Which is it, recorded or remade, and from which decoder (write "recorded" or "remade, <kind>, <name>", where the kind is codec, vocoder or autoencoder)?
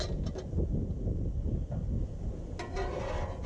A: recorded